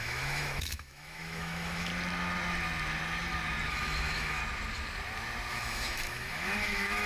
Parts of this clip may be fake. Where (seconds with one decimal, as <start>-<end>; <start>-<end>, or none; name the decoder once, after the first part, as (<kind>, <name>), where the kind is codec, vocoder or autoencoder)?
0.0-1.9 (autoencoder, DAC-VAE); 3.7-4.4; 5.5-7.1